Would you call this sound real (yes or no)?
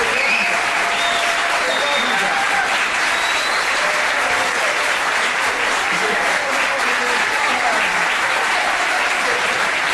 no